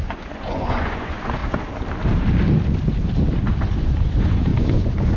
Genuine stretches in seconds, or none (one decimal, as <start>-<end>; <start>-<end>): 1.4-3.8